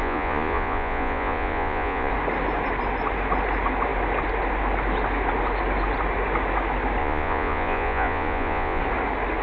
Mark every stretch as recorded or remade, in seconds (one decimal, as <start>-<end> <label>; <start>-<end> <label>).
0.0-2.1 remade; 2.1-7.0 recorded; 7.0-8.8 remade; 8.8-9.4 recorded